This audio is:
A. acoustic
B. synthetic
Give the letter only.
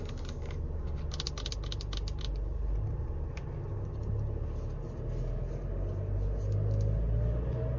A